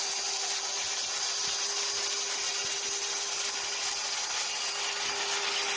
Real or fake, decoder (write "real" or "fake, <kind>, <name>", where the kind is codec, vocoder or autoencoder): real